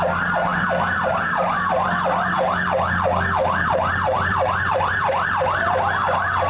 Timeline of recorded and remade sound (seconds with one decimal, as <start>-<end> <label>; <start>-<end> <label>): 0.0-3.4 recorded; 3.4-5.3 remade; 5.3-6.5 recorded